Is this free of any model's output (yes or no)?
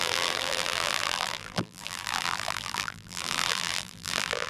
no